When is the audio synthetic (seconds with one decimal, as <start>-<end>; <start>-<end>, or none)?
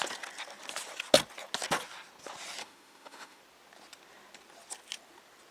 2.6-3.4